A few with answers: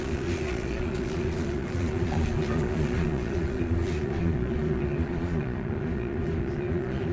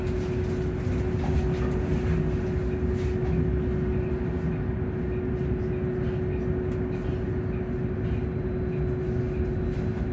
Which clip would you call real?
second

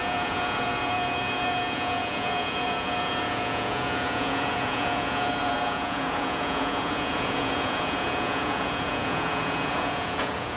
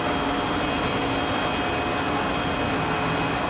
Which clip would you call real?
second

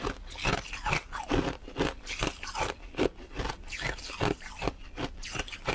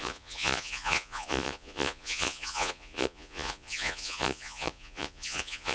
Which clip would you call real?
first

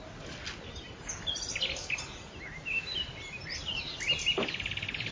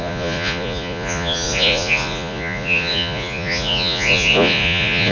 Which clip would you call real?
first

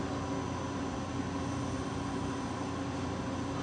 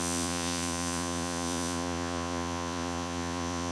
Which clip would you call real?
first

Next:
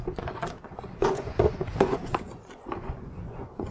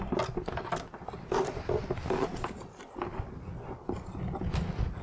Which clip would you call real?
second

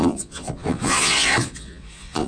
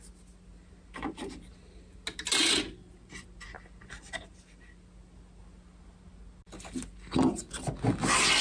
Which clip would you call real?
second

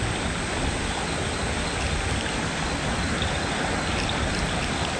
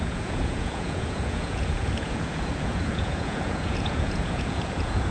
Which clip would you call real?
first